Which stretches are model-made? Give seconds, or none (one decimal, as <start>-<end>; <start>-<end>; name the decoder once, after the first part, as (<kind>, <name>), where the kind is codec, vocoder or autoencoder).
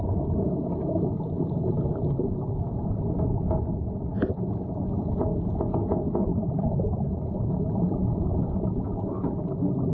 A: none